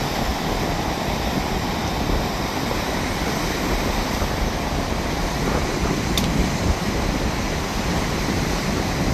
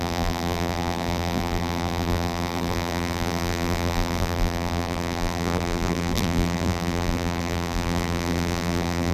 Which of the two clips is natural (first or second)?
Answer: first